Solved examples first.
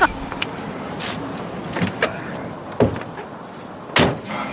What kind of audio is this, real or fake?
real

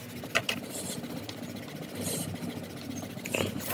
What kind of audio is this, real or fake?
real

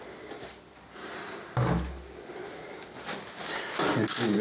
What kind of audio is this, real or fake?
real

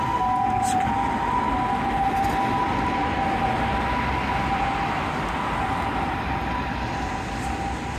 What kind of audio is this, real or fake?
real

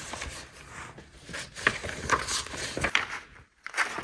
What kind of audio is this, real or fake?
real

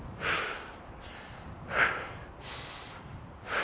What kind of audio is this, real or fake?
real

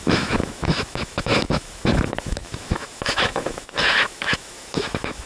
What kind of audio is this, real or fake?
fake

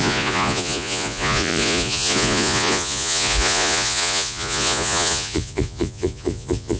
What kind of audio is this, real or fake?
fake